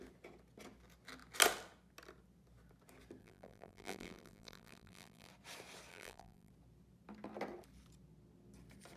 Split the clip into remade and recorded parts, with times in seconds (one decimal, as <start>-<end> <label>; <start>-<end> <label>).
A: 0.0-3.2 recorded; 3.2-5.3 remade; 5.3-5.9 recorded; 5.9-6.5 remade; 6.5-9.0 recorded